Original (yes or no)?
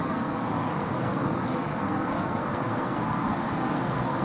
no